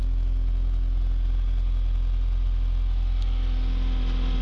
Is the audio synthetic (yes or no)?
no